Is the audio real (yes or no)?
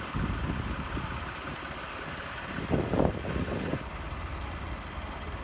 yes